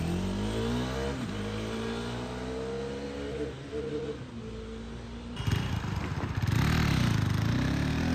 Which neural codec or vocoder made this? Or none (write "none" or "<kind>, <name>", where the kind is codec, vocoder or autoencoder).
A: none